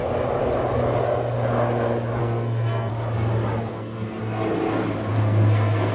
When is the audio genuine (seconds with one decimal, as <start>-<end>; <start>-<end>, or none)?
0.0-2.2; 2.9-3.7; 4.2-5.1